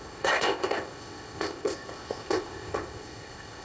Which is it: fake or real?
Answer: fake